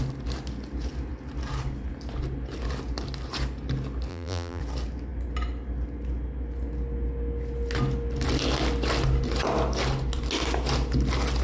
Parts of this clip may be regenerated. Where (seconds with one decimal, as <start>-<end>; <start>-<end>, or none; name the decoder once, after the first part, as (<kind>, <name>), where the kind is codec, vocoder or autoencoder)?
4.1-4.6 (vocoder, BigVGAN v2)